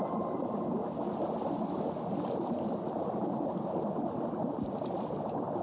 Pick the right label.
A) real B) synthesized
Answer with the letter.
A